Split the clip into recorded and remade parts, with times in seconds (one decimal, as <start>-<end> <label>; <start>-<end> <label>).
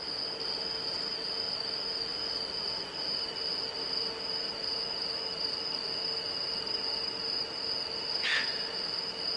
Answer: 0.0-9.4 recorded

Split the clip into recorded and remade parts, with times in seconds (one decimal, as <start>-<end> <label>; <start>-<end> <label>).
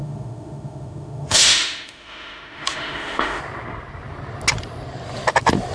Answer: 0.0-3.4 remade; 3.4-5.7 recorded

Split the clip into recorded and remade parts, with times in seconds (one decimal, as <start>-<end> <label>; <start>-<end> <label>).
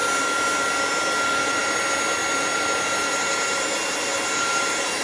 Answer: 0.0-5.0 recorded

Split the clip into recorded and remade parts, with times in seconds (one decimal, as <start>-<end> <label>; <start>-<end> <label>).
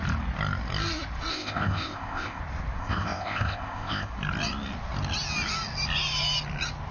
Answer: 0.0-1.3 recorded; 1.3-2.4 remade; 2.4-2.8 recorded; 2.8-4.1 remade; 4.1-6.9 recorded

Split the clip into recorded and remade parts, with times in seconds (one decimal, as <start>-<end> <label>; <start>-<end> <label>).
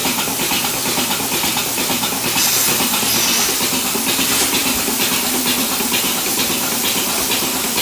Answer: 0.0-2.4 remade; 2.4-4.6 recorded; 4.6-6.3 remade; 6.3-7.8 recorded